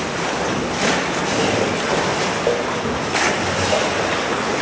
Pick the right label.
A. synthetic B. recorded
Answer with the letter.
B